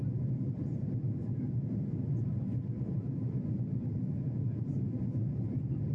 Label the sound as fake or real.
real